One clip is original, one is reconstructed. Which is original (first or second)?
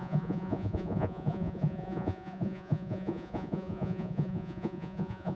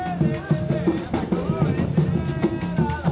second